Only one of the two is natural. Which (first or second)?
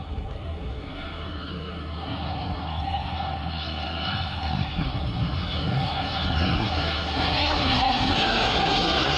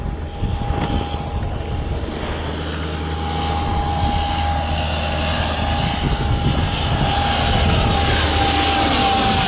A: second